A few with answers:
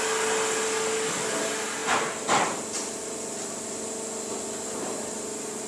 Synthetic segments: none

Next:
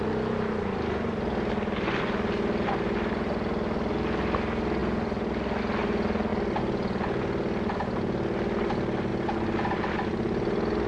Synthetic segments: none